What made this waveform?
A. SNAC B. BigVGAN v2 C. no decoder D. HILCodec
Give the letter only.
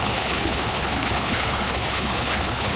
D